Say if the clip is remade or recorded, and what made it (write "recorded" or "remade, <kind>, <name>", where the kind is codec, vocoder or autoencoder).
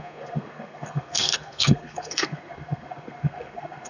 remade, codec, SNAC